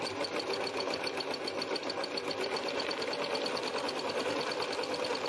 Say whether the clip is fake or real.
real